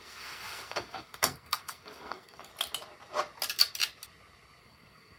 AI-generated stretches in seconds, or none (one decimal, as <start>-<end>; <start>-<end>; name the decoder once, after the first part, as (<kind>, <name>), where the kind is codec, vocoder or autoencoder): 0.0-2.5 (codec, SNAC); 4.6-5.2